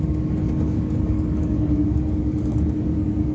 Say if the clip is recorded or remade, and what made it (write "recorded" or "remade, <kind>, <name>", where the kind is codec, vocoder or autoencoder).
remade, codec, DAC